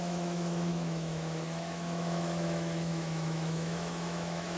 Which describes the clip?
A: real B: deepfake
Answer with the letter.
B